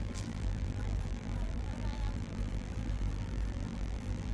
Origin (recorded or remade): remade